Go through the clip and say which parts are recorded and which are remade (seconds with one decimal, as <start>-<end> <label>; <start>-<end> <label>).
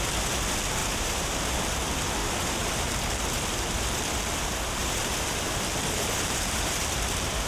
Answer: 0.0-0.8 recorded; 0.8-1.5 remade; 1.5-2.2 recorded; 2.2-2.9 remade; 2.9-3.5 recorded; 3.5-4.0 remade; 4.0-4.8 recorded; 4.8-6.8 remade; 6.8-7.5 recorded